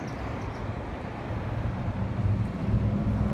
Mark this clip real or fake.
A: real